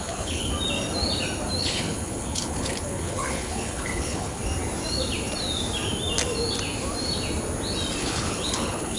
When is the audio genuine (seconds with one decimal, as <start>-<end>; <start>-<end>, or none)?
0.5-1.6; 4.4-8.0